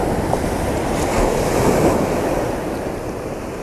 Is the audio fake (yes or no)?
no